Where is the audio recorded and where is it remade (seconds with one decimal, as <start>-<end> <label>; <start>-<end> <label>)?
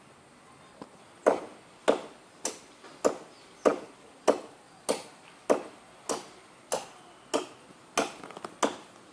0.0-9.1 recorded